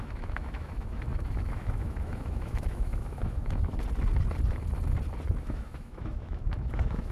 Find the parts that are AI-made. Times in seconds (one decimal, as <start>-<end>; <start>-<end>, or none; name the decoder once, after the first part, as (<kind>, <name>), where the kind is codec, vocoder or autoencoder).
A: 0.0-3.7 (autoencoder, DAC-VAE); 5.4-7.1